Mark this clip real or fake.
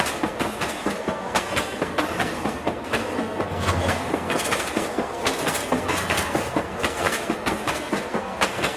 fake